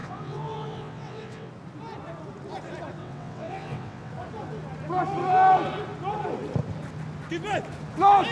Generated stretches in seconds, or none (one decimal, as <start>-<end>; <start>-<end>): 0.0-1.5; 3.0-4.1